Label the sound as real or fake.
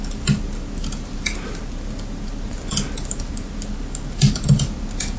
real